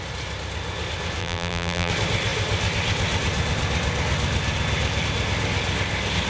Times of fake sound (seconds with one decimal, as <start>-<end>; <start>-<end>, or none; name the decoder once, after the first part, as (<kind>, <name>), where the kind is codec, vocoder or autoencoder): 1.2-1.9 (vocoder, BigVGAN v2)